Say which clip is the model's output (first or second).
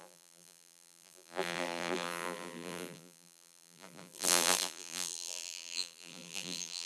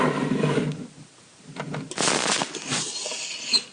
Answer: first